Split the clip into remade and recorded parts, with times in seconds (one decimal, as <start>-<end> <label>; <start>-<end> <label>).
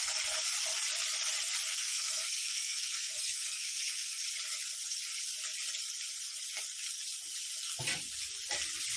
0.0-1.7 recorded; 1.7-4.2 remade; 4.2-9.0 recorded